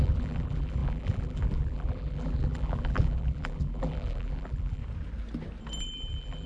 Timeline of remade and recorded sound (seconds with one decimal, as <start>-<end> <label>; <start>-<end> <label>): 0.0-4.8 remade; 4.8-5.8 recorded; 5.8-6.5 remade